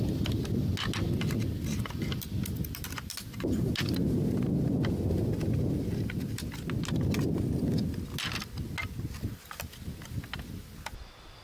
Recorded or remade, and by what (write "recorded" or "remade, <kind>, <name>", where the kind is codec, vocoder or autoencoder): recorded